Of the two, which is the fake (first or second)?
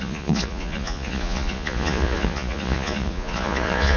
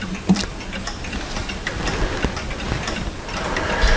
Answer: first